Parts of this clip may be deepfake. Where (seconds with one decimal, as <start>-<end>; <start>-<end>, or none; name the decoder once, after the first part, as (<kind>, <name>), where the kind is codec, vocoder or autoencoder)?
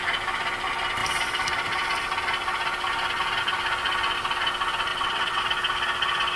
4.9-5.4 (vocoder, WaveNeXt)